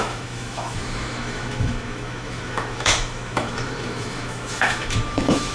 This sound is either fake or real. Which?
fake